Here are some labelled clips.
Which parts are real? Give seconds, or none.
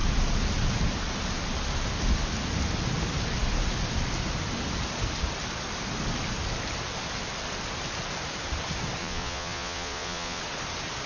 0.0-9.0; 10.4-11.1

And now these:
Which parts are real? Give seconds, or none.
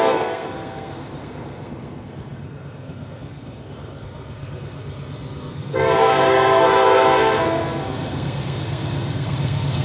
none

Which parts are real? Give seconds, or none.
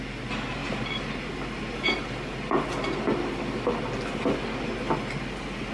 0.0-5.7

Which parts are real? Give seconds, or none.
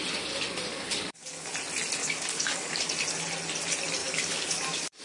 0.0-0.7; 1.5-2.0; 2.9-4.0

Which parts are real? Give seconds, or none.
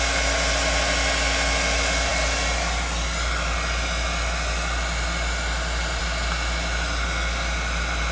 0.0-8.1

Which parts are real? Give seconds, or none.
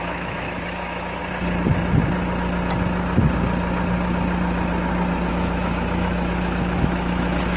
1.2-5.3